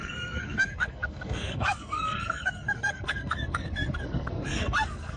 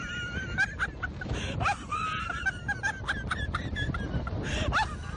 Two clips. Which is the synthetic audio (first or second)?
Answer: first